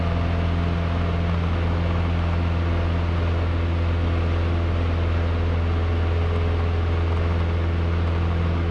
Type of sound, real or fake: real